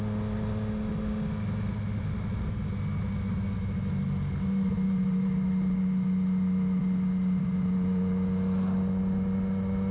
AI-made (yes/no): no